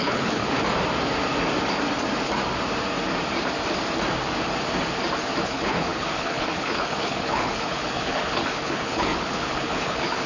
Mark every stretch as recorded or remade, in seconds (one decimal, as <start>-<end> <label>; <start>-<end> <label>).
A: 0.0-0.4 remade; 0.4-5.4 recorded; 5.4-10.3 remade